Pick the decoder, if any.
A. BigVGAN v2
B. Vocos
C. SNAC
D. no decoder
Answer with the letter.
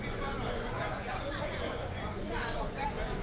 B